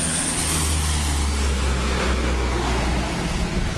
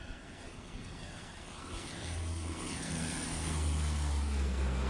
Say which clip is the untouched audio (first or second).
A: first